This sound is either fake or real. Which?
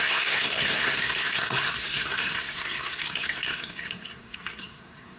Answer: fake